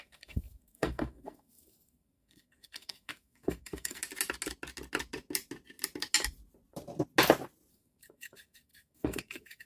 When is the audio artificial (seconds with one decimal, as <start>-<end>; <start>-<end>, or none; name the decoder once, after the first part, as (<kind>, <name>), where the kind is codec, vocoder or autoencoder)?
0.0-4.0 (codec, SNAC); 7.7-9.7